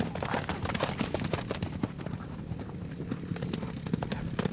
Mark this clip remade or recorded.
remade